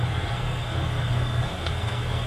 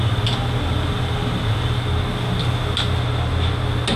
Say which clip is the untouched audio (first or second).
second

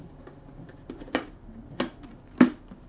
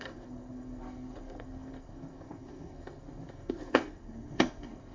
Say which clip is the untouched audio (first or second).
first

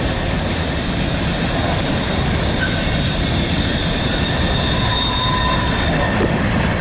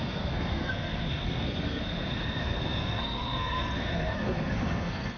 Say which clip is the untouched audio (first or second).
first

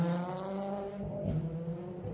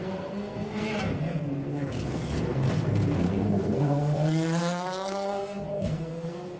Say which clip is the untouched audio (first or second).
first